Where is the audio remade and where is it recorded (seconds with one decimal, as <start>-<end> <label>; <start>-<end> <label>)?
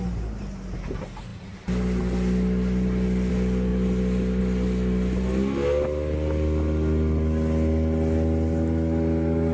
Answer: 0.0-9.5 recorded